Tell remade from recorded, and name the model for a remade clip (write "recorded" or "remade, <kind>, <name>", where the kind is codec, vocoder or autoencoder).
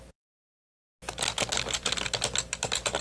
recorded